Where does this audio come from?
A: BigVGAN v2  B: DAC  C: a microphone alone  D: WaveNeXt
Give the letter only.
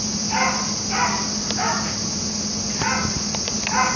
C